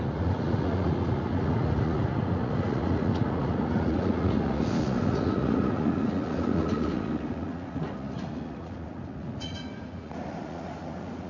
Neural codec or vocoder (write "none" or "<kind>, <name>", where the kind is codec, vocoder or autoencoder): vocoder, Vocos